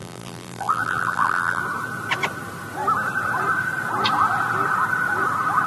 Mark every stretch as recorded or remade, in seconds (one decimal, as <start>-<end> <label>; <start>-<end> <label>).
0.0-1.6 remade; 1.6-5.7 recorded